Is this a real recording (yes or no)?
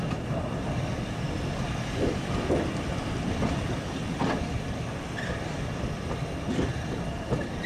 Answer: no